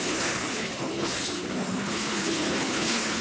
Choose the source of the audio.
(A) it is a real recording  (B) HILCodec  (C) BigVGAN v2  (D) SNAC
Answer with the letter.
B